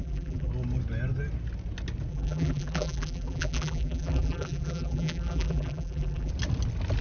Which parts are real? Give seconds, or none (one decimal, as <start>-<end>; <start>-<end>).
0.5-2.1; 6.3-7.0